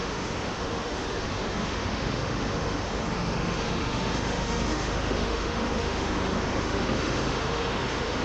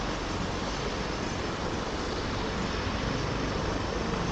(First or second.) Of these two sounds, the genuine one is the second